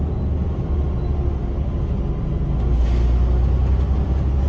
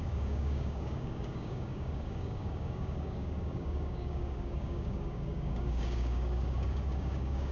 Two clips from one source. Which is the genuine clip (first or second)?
first